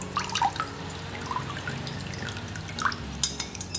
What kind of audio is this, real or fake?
real